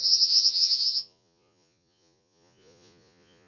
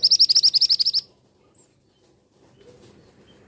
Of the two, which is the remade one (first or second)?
first